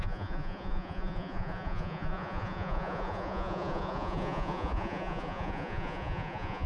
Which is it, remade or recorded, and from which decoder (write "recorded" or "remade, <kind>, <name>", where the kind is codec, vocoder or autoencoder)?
remade, vocoder, Vocos